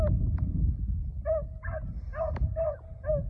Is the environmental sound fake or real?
real